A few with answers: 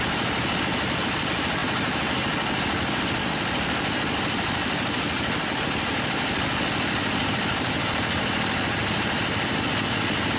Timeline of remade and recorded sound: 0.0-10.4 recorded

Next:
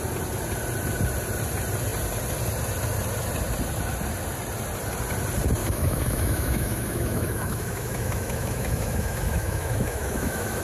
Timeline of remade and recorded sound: 0.0-5.6 recorded; 5.6-10.6 remade

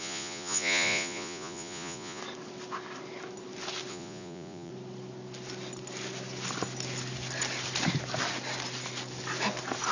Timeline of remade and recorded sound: 0.0-2.2 remade; 2.2-3.9 recorded; 3.9-4.7 remade; 4.7-9.9 recorded

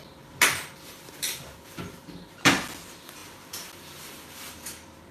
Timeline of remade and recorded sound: 0.0-5.1 recorded

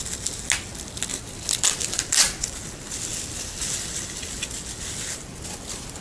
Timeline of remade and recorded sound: 0.0-6.0 recorded

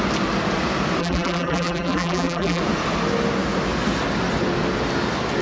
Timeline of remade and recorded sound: 0.0-1.0 recorded; 1.0-2.6 remade; 2.6-5.4 recorded

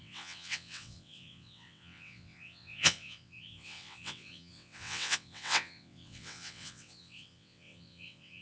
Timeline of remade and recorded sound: 0.0-8.4 remade